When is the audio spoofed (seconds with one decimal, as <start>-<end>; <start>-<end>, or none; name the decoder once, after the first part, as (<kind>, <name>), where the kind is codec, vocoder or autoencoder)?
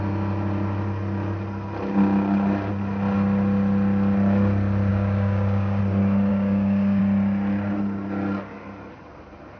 4.9-5.8 (codec, DAC); 6.3-7.0